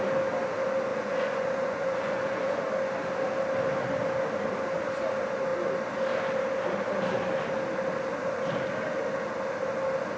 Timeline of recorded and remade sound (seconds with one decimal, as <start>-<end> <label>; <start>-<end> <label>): 0.0-0.9 recorded; 0.9-2.6 remade; 2.6-10.2 recorded